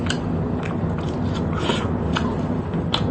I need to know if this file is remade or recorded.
recorded